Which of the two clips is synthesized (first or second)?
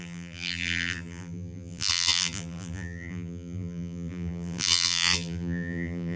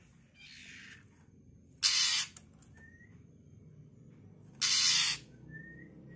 first